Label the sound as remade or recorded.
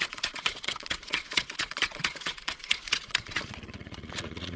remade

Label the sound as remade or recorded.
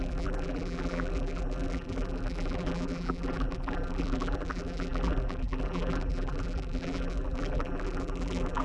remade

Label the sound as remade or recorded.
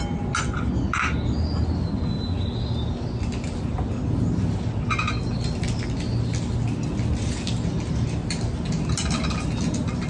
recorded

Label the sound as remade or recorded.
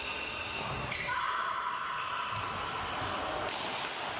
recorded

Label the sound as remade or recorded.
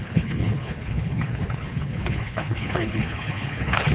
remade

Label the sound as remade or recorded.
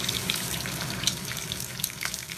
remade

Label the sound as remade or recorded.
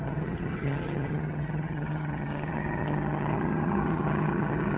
remade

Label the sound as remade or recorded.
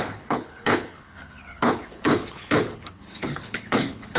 remade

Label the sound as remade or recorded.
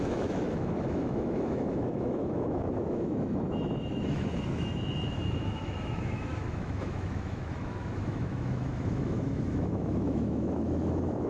remade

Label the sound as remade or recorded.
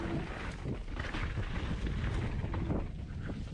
recorded